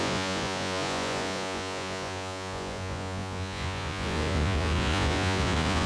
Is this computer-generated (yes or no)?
yes